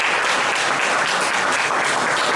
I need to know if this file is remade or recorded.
recorded